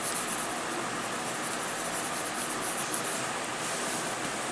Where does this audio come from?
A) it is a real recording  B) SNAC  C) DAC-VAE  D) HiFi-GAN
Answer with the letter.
A